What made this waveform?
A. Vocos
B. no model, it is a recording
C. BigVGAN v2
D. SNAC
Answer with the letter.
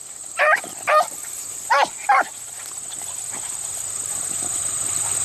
C